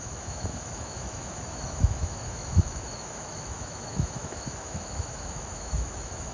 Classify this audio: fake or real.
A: fake